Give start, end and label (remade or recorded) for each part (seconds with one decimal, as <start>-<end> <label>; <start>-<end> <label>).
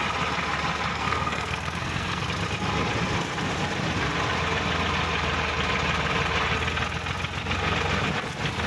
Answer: 0.0-0.9 recorded; 0.9-2.3 remade; 2.3-8.7 recorded